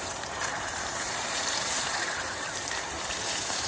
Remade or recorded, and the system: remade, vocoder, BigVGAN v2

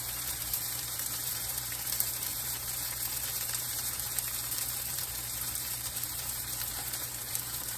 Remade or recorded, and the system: remade, vocoder, BigVGAN v2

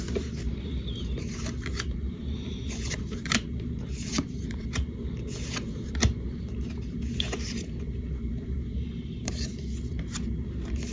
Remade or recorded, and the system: remade, vocoder, BigVGAN v2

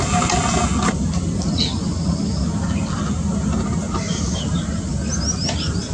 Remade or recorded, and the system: recorded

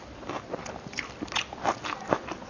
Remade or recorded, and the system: recorded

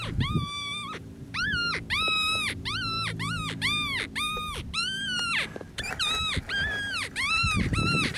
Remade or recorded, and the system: remade, vocoder, BigVGAN v2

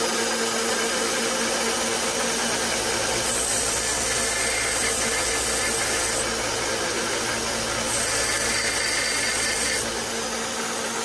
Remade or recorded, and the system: recorded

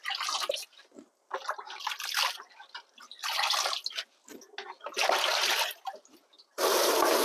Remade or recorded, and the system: recorded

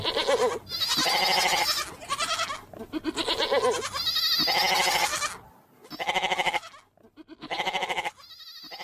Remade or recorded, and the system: recorded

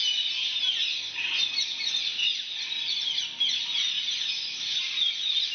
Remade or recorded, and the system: recorded